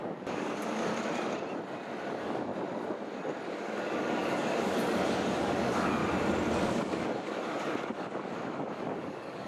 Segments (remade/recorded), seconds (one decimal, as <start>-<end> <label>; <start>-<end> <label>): 0.0-0.9 remade; 0.9-2.1 recorded; 2.1-2.5 remade; 2.5-3.5 recorded; 3.5-6.0 remade; 6.0-6.6 recorded; 6.6-9.5 remade